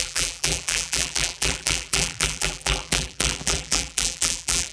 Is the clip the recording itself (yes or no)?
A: no